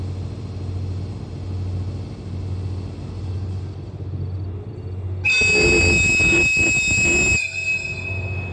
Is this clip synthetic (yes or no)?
no